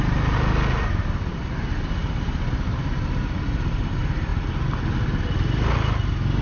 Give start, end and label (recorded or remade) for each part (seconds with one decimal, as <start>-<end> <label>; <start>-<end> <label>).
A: 0.0-6.4 recorded